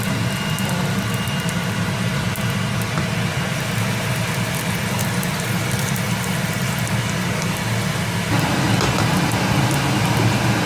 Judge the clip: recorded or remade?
recorded